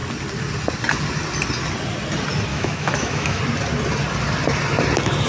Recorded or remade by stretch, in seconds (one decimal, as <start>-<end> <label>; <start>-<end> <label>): 0.0-2.5 recorded; 2.5-3.4 remade; 3.4-5.3 recorded

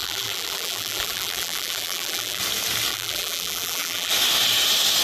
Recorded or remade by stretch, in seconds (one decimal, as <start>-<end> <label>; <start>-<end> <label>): 0.0-2.4 remade; 2.4-2.9 recorded; 2.9-4.1 remade; 4.1-5.0 recorded